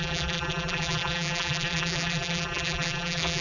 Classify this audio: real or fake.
fake